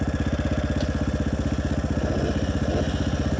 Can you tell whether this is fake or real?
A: real